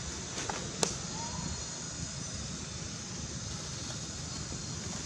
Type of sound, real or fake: real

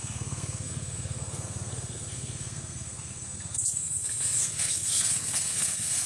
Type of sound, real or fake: fake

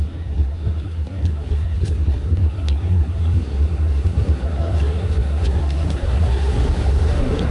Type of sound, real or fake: fake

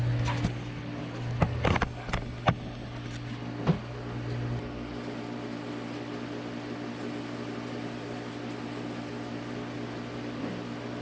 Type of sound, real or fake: real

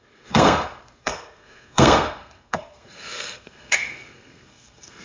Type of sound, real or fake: fake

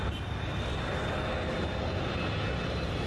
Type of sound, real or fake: real